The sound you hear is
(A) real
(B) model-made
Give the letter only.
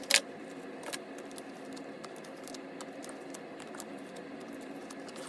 A